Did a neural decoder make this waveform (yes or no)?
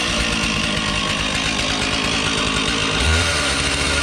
no